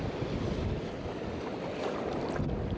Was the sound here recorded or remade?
recorded